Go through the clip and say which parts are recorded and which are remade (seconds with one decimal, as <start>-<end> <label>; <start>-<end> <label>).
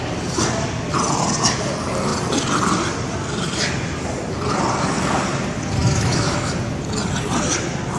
0.0-5.8 recorded; 5.8-6.5 remade; 6.5-8.0 recorded